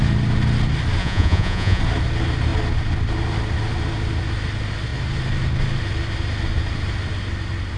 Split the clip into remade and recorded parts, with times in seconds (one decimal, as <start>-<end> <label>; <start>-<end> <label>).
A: 0.0-1.0 recorded; 1.0-1.8 remade; 1.8-7.8 recorded